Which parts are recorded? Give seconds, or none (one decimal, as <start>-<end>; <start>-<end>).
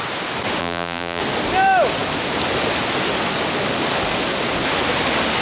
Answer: 0.0-0.6; 1.2-5.4